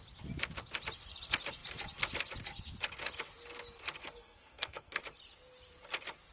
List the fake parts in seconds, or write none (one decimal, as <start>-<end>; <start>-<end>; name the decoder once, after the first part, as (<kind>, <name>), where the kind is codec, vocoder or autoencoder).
4.0-5.0 (codec, SNAC)